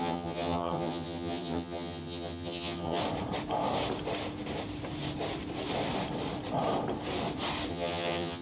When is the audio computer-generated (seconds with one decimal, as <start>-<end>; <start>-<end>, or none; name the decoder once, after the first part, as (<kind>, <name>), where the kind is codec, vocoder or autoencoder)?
0.0-3.0 (vocoder, HiFi-GAN); 7.7-8.4